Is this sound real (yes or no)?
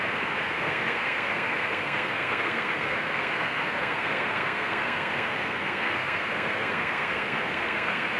no